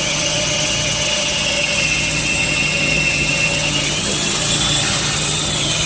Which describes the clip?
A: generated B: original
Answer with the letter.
A